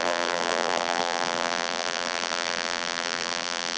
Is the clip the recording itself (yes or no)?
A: no